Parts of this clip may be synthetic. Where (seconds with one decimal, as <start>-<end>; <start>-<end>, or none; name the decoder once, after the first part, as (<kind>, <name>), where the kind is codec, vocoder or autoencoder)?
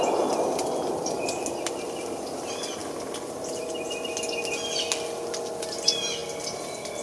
none